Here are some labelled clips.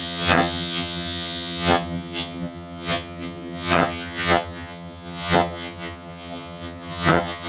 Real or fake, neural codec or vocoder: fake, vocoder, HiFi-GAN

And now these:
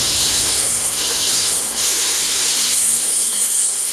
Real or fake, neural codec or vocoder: fake, codec, SNAC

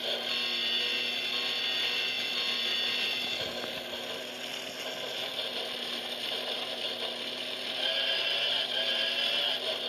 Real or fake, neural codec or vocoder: real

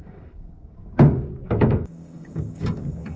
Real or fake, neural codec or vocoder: fake, codec, DAC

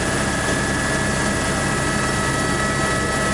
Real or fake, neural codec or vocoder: real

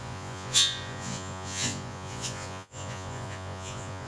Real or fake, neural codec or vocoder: fake, vocoder, Vocos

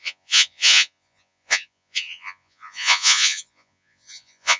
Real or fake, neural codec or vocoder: fake, vocoder, Vocos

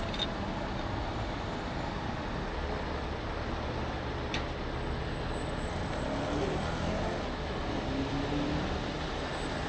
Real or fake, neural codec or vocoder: real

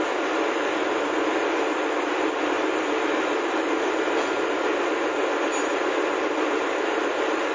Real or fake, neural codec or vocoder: real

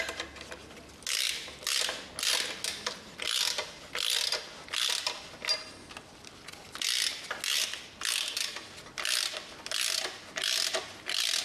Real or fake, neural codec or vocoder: real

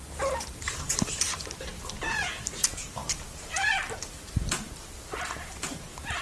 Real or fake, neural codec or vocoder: fake, vocoder, BigVGAN v2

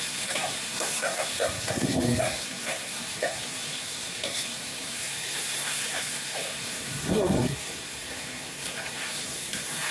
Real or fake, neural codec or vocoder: fake, codec, SNAC